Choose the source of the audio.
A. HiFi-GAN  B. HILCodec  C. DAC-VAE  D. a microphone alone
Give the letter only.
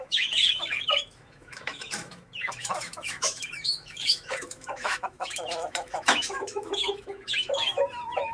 C